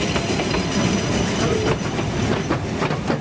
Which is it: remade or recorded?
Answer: recorded